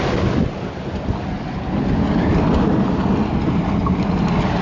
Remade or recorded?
recorded